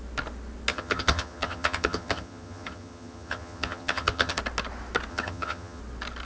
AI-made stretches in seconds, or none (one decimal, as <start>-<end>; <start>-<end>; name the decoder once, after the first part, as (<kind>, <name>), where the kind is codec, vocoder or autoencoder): 0.7-4.4 (vocoder, HiFi-GAN); 5.1-5.8